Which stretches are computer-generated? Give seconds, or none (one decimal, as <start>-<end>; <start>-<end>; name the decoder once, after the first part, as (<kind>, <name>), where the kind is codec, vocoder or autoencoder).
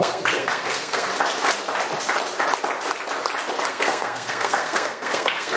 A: 0.0-1.1 (codec, SNAC); 3.7-5.6